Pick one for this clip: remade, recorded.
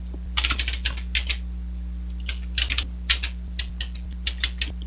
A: recorded